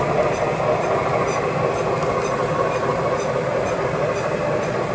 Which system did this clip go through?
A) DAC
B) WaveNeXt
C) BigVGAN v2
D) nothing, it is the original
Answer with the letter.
D